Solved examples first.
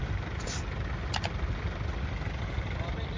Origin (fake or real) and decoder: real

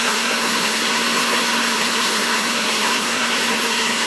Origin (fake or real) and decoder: fake, codec, SNAC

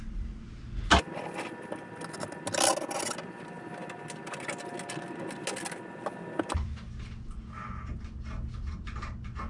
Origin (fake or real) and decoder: real